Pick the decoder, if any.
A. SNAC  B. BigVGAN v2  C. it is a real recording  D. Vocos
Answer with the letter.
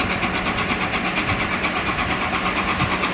C